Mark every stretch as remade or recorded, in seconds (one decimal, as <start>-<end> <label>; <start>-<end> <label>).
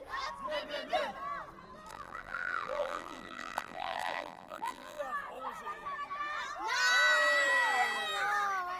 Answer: 0.0-1.9 recorded; 1.9-5.0 remade; 5.0-8.8 recorded